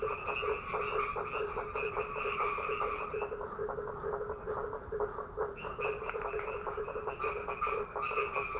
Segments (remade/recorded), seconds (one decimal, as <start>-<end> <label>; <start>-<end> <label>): 0.0-8.6 recorded

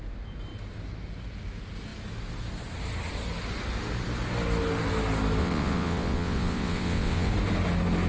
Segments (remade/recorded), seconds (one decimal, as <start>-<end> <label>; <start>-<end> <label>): 0.0-5.4 recorded; 5.4-7.3 remade; 7.3-8.1 recorded

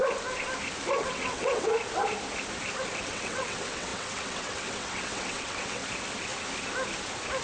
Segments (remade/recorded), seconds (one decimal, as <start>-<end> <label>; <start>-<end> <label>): 0.0-0.9 recorded; 0.9-1.7 remade; 1.7-3.0 recorded; 3.0-5.8 remade; 5.8-7.4 recorded

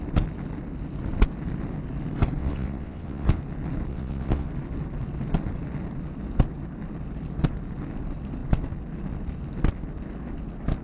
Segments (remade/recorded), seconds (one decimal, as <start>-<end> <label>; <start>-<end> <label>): 0.0-2.4 recorded; 2.4-3.4 remade; 3.4-3.9 recorded; 3.9-4.5 remade; 4.5-10.8 recorded

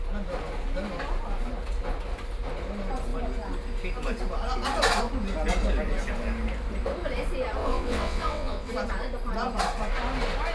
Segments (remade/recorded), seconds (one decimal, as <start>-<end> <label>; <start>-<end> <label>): 0.0-7.6 recorded; 7.6-8.7 remade; 8.7-10.5 recorded